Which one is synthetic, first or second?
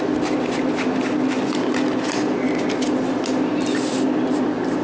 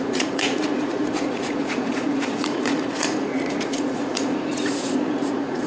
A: second